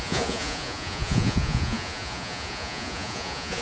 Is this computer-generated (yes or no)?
yes